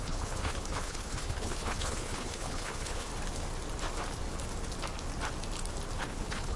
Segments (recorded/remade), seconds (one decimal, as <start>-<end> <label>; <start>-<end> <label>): 0.0-3.1 remade; 3.1-6.0 recorded; 6.0-6.6 remade